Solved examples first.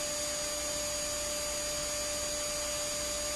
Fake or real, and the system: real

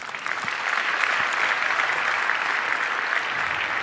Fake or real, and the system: real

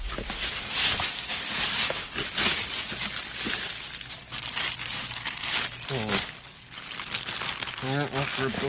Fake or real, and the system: real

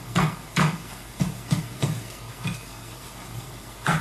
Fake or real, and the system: fake, codec, SNAC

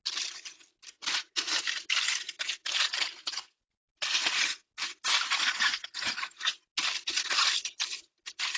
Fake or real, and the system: real